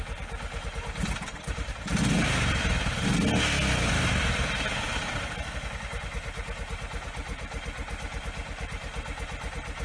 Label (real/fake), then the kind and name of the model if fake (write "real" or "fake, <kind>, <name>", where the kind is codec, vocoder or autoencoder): real